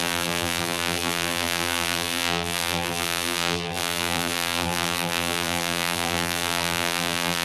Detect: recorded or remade remade